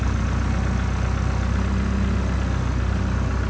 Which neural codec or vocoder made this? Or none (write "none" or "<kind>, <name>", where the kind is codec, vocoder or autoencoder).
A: none